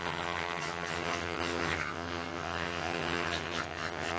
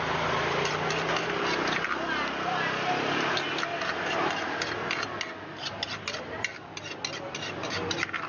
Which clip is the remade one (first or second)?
first